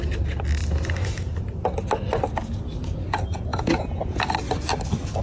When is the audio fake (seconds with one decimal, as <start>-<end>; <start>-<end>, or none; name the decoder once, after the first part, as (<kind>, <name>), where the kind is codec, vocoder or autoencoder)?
3.5-4.2 (vocoder, Vocos)